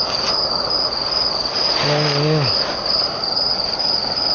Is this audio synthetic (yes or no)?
no